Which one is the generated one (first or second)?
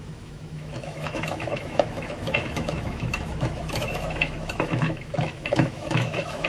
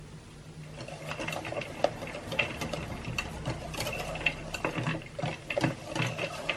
first